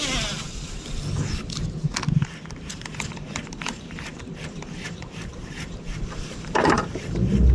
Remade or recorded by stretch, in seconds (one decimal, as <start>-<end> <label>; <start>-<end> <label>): 0.0-2.7 recorded; 2.7-7.5 remade